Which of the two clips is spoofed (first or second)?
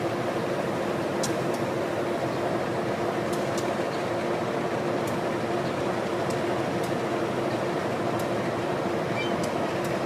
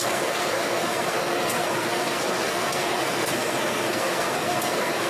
second